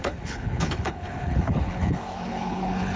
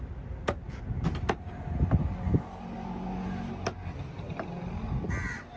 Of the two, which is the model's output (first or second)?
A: first